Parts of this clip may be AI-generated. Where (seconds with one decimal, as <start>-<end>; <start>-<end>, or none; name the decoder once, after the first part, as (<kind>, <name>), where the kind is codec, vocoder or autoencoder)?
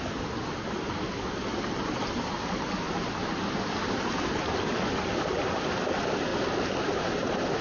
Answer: none